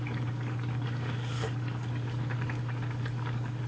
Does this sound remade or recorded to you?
remade